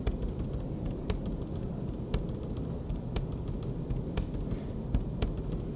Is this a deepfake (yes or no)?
no